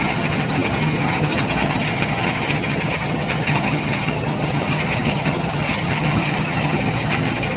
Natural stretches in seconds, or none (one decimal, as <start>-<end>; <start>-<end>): none